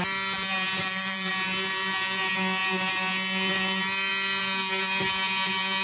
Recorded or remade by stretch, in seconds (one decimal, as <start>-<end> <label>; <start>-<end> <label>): 0.0-0.8 recorded; 0.8-1.3 remade; 1.3-5.8 recorded